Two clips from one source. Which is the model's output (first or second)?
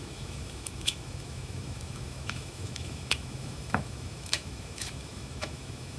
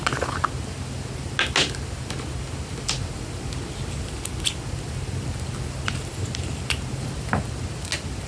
first